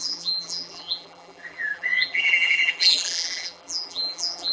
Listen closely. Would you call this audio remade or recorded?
remade